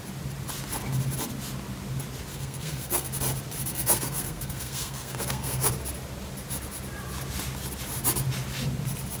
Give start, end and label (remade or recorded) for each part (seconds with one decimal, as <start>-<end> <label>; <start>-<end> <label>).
0.0-2.3 recorded; 2.3-3.1 remade; 3.1-3.7 recorded; 3.7-5.7 remade; 5.7-9.2 recorded